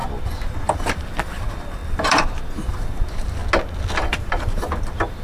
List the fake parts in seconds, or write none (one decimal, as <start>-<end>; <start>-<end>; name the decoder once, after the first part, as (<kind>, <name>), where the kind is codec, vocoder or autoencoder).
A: 0.5-3.4 (vocoder, BigVGAN v2); 4.0-5.2